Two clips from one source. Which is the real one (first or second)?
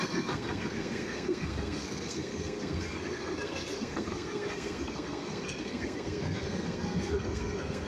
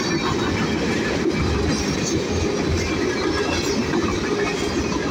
second